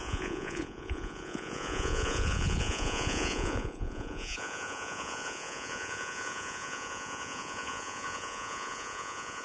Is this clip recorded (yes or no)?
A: no